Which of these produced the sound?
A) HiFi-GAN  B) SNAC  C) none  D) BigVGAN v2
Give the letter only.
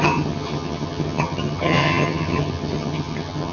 A